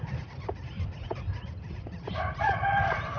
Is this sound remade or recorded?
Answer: remade